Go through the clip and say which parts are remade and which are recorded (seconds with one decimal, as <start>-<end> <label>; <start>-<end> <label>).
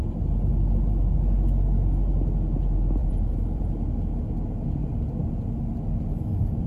0.0-3.0 recorded; 3.0-3.9 remade; 3.9-6.7 recorded